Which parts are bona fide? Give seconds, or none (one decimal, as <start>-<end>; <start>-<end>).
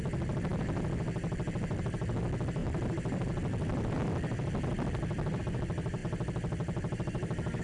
0.0-7.6